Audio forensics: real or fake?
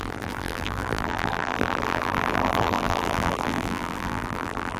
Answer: fake